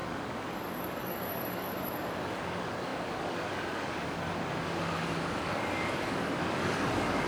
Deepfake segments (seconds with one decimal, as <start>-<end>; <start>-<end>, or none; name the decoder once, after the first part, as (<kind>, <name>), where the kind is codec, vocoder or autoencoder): 0.0-7.3 (codec, DAC)